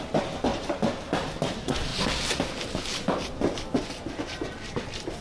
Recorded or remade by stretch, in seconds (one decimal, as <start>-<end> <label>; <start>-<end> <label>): 0.0-1.9 recorded; 1.9-5.2 remade